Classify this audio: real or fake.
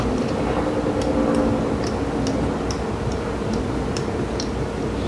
real